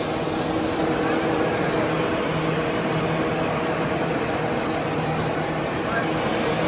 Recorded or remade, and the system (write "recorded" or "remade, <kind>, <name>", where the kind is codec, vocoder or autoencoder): remade, vocoder, BigVGAN v2